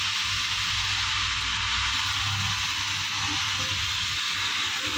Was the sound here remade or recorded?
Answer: recorded